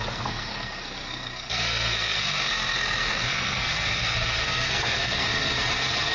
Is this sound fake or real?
fake